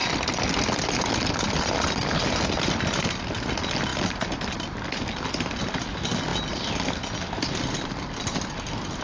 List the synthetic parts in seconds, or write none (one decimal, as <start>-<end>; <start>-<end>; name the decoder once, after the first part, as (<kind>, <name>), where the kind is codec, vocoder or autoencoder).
none